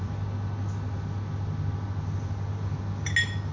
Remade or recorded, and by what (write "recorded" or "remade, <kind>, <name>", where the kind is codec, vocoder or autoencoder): recorded